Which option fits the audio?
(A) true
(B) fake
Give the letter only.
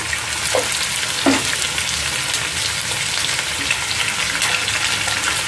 A